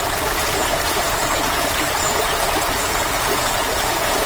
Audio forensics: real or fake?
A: fake